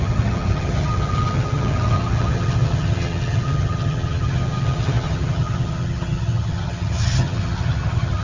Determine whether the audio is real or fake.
fake